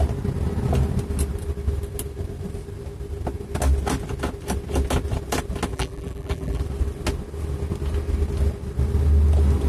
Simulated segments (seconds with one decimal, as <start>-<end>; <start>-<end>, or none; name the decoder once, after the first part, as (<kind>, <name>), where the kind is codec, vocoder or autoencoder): 5.7-6.6 (vocoder, BigVGAN v2)